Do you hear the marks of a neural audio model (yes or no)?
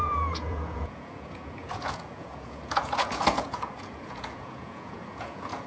yes